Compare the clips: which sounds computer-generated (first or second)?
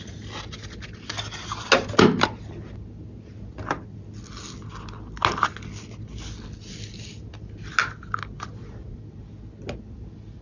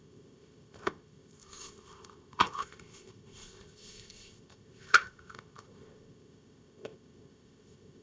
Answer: second